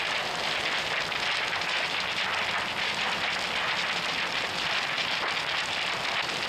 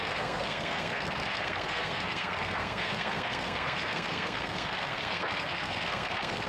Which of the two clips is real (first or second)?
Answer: first